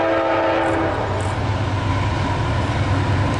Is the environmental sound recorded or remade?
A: recorded